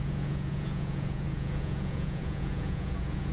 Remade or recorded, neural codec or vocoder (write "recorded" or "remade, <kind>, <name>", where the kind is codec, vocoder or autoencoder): remade, vocoder, Vocos